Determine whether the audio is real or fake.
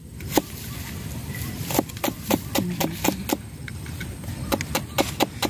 real